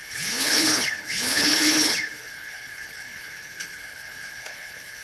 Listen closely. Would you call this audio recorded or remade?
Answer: remade